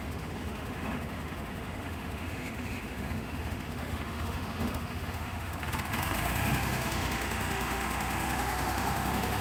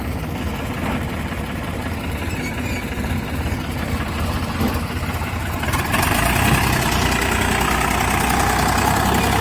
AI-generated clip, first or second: first